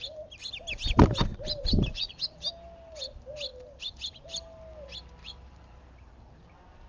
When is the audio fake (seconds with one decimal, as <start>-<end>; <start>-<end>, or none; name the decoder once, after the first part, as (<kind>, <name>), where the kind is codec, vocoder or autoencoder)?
1.3-2.1 (vocoder, BigVGAN v2); 5.2-6.1